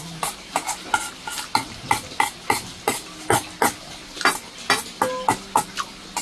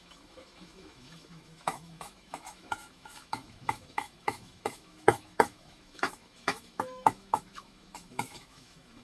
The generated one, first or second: second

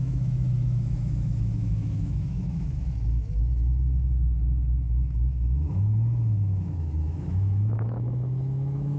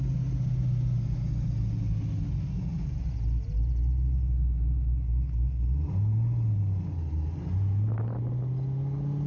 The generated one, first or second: first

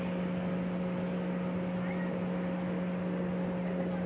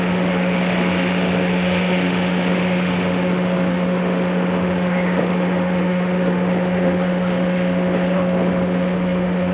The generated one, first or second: second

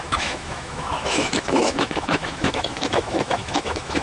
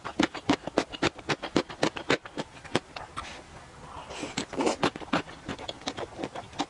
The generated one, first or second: first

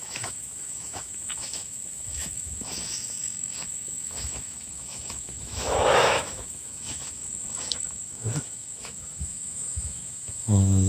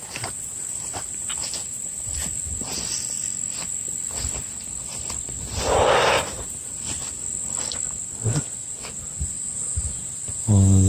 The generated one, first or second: first